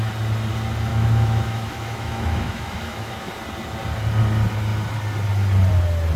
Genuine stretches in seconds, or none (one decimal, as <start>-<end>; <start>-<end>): 0.0-0.9; 3.3-6.2